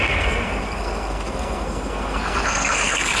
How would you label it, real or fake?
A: fake